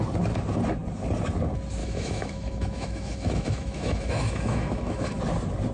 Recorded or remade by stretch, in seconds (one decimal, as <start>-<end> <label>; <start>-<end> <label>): 0.0-1.8 recorded; 1.8-5.2 remade; 5.2-5.7 recorded